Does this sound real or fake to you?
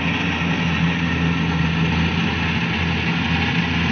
real